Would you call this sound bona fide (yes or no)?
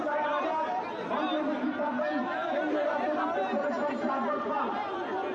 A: yes